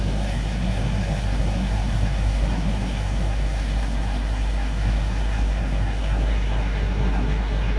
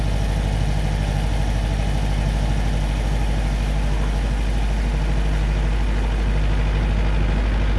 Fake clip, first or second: first